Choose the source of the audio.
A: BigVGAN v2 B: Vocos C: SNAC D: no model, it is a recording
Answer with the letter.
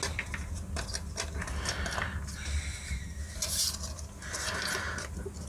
D